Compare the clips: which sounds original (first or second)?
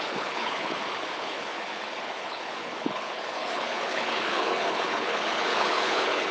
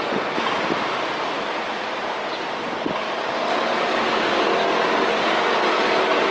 second